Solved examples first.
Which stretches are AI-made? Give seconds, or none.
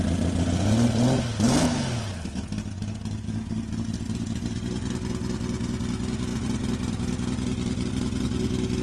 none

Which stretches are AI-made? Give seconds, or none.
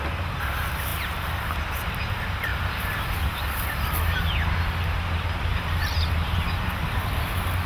2.5-3.0; 5.5-6.6